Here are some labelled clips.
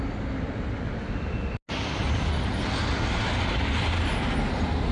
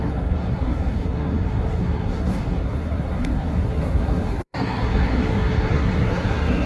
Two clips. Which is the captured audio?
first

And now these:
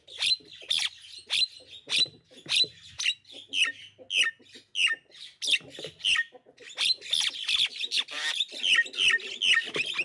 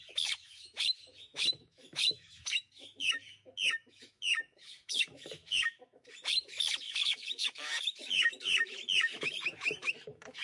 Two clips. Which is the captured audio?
first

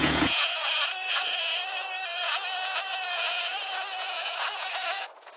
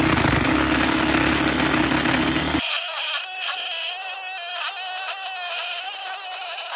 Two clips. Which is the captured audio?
second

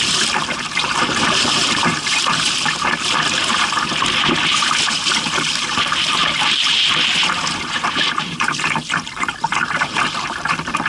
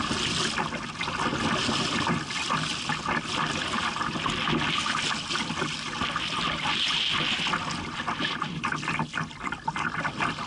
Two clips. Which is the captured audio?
second